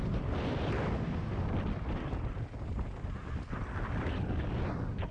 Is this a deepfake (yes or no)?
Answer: no